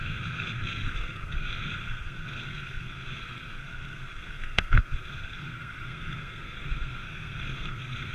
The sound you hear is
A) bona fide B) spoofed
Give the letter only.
B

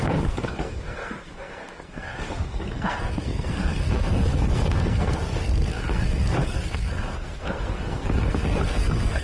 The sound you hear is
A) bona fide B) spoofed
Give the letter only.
B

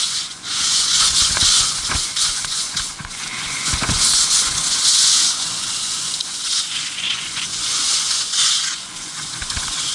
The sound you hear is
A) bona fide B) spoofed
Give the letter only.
B